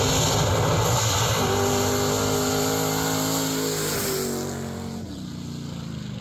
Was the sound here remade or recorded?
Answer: recorded